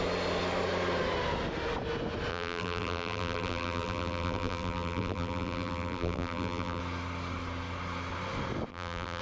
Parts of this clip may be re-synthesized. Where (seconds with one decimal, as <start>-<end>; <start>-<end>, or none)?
2.3-6.8; 8.7-9.2